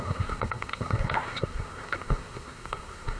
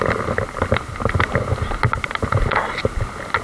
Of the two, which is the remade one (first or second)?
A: first